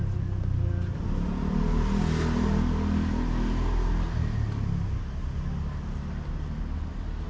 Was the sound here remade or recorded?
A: recorded